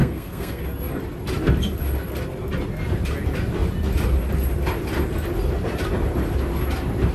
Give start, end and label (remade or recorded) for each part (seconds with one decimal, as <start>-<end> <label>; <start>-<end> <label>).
0.0-0.6 remade; 0.6-7.1 recorded